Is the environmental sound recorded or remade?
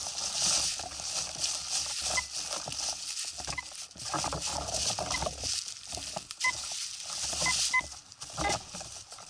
recorded